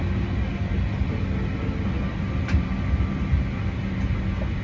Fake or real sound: real